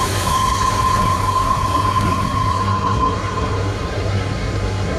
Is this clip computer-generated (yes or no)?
yes